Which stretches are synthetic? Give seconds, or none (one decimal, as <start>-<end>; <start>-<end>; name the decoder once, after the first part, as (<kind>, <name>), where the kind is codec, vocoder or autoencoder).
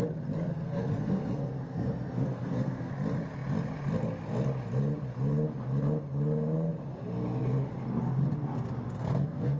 0.5-2.9 (codec, SNAC); 9.0-9.6